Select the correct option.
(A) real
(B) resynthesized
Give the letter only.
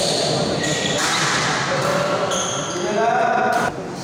A